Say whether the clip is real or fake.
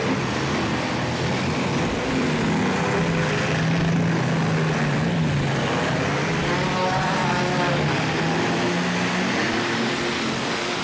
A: real